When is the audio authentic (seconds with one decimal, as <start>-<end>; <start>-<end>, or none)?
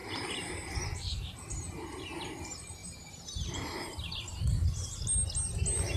2.0-2.8; 4.1-6.0